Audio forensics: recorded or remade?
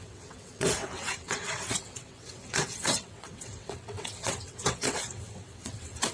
remade